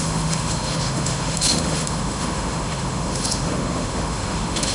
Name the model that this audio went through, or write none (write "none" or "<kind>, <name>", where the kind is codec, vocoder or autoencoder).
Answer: autoencoder, DAC-VAE